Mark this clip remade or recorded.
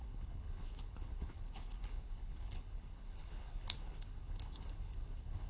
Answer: remade